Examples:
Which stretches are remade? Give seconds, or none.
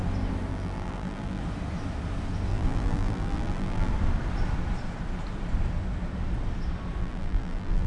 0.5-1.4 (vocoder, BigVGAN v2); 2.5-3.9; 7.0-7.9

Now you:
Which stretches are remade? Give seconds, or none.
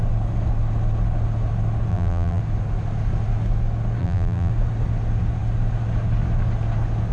1.9-2.4 (vocoder, BigVGAN v2); 4.0-4.5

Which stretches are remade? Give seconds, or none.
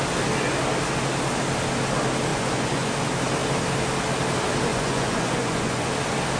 2.3-2.9 (vocoder, Vocos); 4.7-5.9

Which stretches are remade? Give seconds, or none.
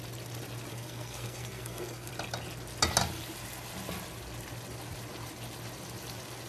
0.7-2.1 (codec, SNAC)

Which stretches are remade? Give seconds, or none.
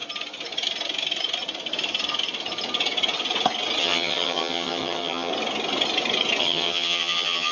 3.8-5.3 (vocoder, HiFi-GAN); 6.4-7.5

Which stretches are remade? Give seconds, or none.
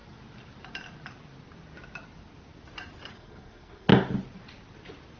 3.1-3.9 (codec, SNAC)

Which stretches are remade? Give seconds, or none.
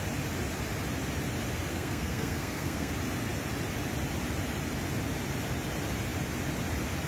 1.7-2.9 (codec, SNAC)